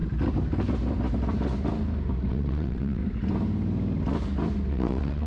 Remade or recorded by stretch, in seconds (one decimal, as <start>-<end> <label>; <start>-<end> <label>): 0.0-2.3 recorded; 2.3-3.0 remade; 3.0-4.7 recorded; 4.7-5.3 remade